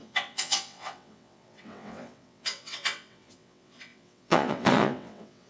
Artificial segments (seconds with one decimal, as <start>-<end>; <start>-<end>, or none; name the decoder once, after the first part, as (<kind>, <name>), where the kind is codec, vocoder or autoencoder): 0.0-5.5 (vocoder, WaveNeXt)